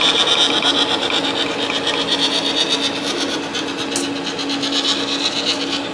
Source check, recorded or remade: recorded